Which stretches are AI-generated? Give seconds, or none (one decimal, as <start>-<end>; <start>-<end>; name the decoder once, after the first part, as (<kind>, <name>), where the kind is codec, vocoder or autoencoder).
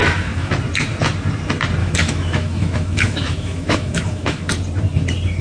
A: 0.0-0.5 (autoencoder, DAC-VAE); 1.8-4.5